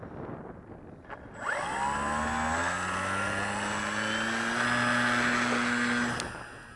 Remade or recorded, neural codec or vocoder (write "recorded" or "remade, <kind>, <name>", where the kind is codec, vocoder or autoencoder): recorded